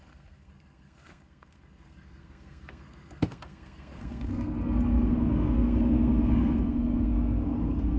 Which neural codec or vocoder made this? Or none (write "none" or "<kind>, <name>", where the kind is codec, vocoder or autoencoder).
codec, SNAC